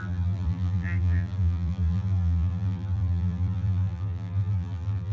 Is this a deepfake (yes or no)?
yes